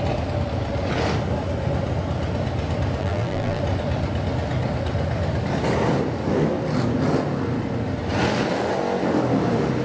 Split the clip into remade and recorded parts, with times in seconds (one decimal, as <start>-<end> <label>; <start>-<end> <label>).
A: 0.0-3.0 recorded; 3.0-3.6 remade; 3.6-9.8 recorded